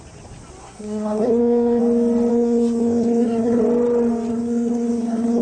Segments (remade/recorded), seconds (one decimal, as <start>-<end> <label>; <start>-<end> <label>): 0.0-0.6 recorded; 0.6-1.8 remade; 1.8-2.3 recorded; 2.3-3.6 remade; 3.6-4.3 recorded; 4.3-5.4 remade